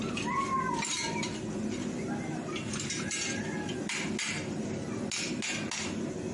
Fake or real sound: real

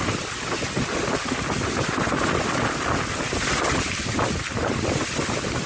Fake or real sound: real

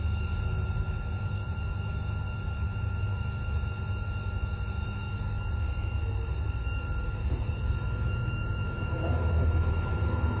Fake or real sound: fake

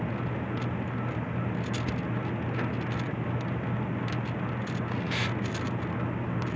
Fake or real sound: real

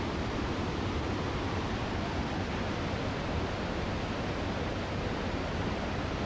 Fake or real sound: real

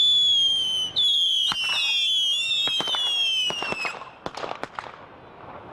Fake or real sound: real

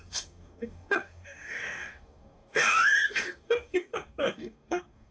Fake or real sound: fake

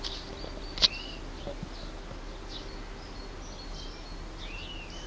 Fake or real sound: real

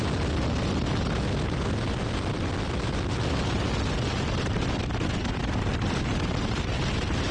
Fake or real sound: real